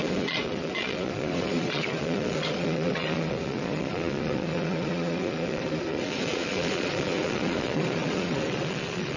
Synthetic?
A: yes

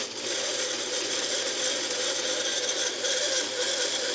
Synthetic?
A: no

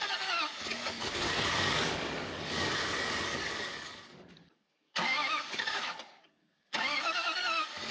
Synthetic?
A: yes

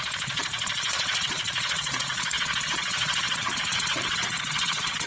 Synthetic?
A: yes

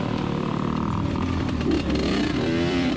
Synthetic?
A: yes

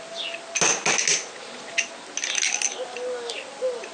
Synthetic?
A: no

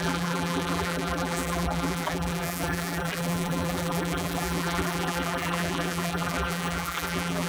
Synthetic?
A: yes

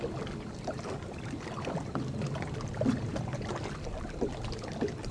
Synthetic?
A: no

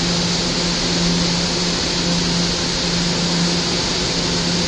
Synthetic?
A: no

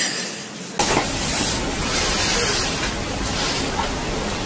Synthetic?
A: no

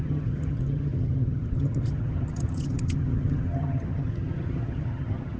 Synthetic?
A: yes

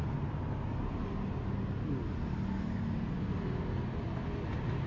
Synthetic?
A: no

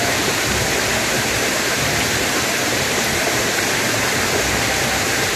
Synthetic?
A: yes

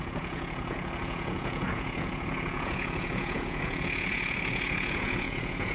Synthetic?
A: yes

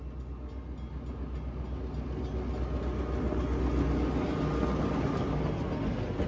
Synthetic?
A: no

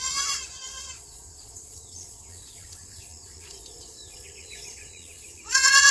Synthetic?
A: yes